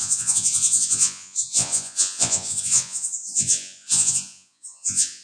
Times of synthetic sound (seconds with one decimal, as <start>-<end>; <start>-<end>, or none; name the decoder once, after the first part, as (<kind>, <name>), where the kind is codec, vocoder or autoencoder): 0.0-5.2 (vocoder, Vocos)